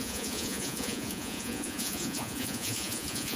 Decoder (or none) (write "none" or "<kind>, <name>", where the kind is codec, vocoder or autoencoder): vocoder, Vocos